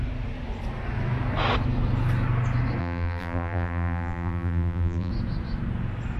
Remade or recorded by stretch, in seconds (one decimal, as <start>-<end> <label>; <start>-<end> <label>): 0.0-2.8 recorded; 2.8-5.1 remade; 5.1-6.2 recorded